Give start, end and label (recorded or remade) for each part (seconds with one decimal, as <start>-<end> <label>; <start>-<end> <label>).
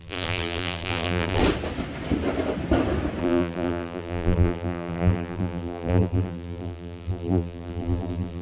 0.0-1.4 remade; 1.4-3.2 recorded; 3.2-8.4 remade